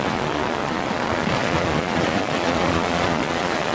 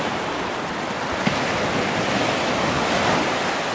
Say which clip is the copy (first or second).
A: first